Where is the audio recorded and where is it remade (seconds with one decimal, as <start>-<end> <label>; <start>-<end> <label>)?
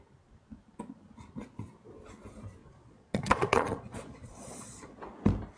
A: 0.0-2.6 recorded; 2.6-5.0 remade; 5.0-5.6 recorded